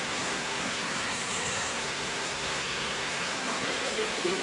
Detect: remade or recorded remade